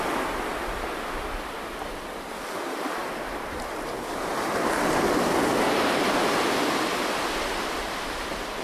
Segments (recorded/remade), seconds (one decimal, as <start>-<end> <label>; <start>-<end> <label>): 0.0-3.0 recorded; 3.0-3.7 remade; 3.7-8.6 recorded